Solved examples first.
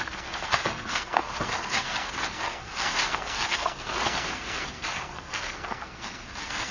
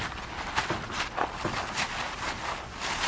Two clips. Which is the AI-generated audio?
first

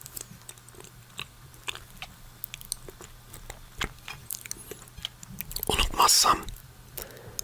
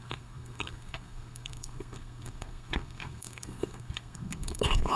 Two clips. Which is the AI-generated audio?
second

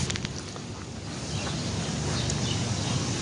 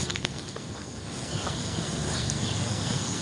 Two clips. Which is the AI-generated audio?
second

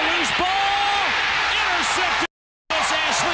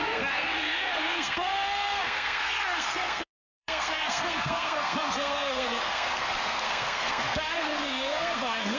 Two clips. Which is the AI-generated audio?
second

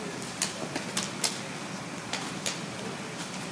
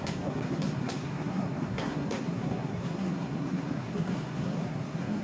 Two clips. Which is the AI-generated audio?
second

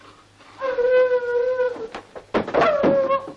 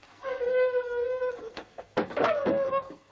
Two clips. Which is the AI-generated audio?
second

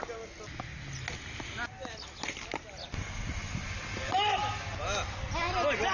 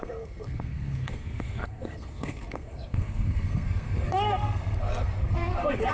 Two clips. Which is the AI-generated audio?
second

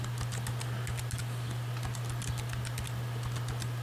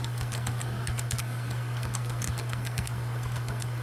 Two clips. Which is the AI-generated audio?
second